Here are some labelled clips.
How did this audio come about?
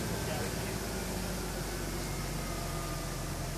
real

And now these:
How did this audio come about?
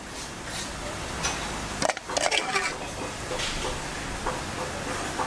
real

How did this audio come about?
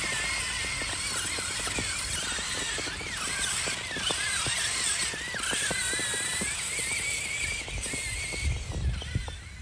real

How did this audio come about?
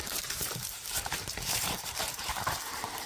fake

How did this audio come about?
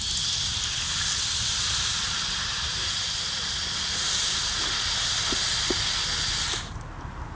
real